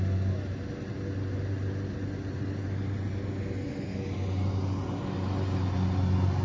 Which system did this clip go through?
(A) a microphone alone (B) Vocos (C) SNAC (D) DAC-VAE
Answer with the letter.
A